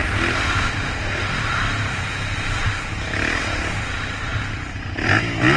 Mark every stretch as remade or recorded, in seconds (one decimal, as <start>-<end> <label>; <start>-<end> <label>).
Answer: 0.0-5.6 recorded